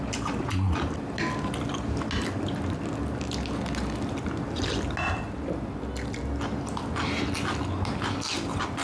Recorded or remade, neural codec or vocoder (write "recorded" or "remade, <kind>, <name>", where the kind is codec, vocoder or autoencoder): recorded